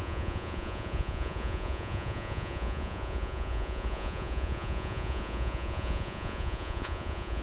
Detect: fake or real fake